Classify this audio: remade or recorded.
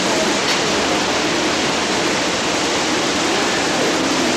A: recorded